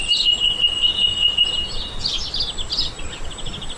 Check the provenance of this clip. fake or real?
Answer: real